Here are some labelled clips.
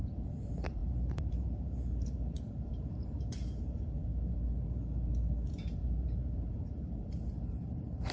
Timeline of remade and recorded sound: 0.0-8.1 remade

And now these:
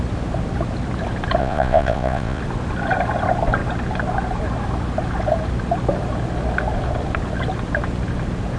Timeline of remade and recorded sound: 0.0-1.4 recorded; 1.4-2.4 remade; 2.4-8.6 recorded